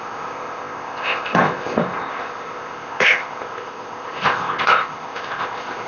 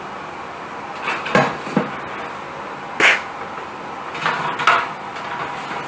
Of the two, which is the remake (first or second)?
first